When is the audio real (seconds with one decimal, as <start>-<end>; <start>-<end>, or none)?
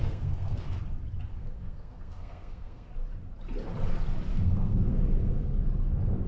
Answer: 0.8-1.3; 2.9-4.3; 5.5-6.3